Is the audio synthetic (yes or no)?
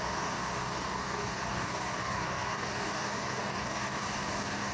yes